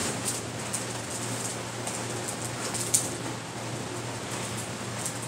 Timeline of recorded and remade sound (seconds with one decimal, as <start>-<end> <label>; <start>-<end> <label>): 0.0-0.6 remade; 0.6-5.3 recorded